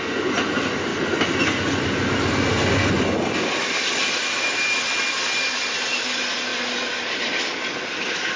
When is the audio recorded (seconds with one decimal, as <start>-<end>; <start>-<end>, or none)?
0.0-8.4